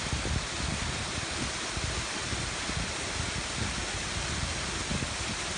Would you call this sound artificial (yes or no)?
no